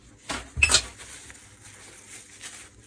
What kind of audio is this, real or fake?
real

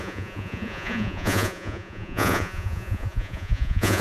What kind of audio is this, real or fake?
fake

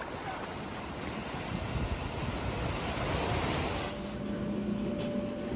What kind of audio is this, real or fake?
real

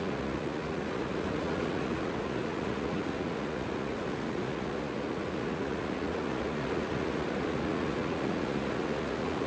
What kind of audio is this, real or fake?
fake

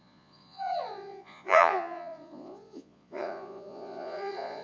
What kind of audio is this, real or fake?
fake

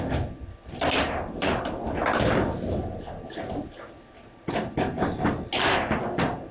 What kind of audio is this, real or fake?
real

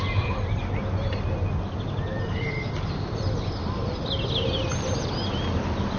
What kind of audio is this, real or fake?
real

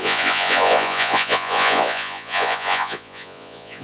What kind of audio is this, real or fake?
fake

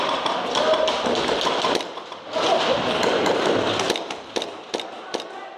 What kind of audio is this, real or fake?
real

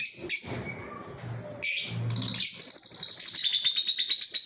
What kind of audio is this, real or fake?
real